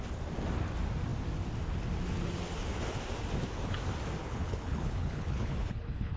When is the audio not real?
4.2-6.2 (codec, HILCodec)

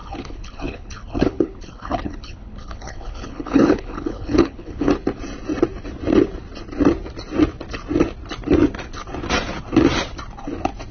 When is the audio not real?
0.0-4.9 (codec, HILCodec)

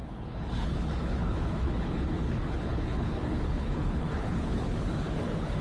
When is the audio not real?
0.0-5.6 (codec, HILCodec)